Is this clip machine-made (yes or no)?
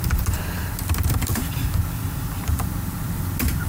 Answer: yes